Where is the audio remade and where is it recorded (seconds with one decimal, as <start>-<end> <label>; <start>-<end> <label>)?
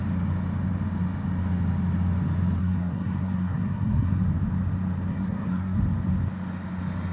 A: 0.0-2.6 recorded; 2.6-4.2 remade; 4.2-5.1 recorded; 5.1-5.8 remade; 5.8-7.1 recorded